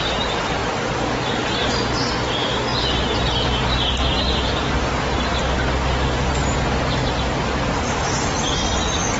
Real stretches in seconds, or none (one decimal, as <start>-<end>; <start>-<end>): 0.0-9.2